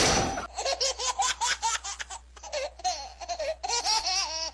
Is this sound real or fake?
real